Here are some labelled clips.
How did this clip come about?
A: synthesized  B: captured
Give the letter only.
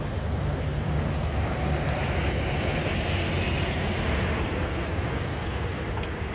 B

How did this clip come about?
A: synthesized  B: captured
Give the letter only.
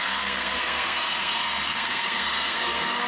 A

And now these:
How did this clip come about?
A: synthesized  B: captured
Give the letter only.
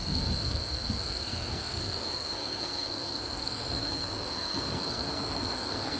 A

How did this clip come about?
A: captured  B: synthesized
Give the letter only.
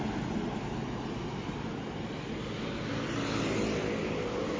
A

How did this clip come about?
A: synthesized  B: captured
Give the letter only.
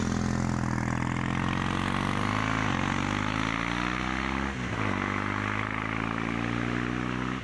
B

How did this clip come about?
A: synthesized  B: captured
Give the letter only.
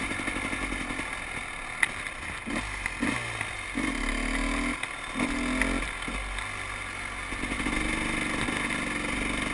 B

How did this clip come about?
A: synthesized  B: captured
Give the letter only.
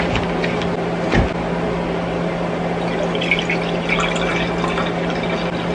B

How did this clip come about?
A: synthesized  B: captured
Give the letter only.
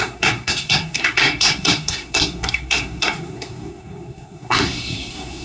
A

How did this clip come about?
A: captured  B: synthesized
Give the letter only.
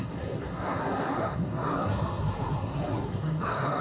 B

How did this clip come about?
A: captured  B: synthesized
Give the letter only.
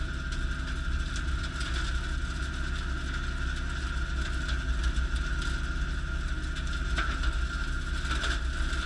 A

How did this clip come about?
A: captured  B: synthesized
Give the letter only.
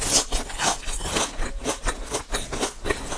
A